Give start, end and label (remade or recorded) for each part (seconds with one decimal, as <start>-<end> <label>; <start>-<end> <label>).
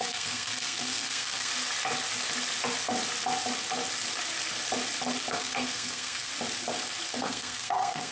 0.0-1.5 remade; 1.5-5.3 recorded; 5.3-6.3 remade; 6.3-7.1 recorded; 7.1-8.1 remade